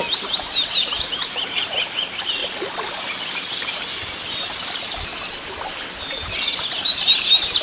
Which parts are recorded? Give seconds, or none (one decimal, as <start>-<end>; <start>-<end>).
2.4-4.3; 5.1-6.2